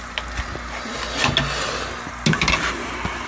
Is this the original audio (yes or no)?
yes